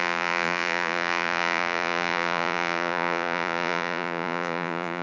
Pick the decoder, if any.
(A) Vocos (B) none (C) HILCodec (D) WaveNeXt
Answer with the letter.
A